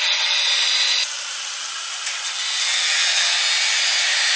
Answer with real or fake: real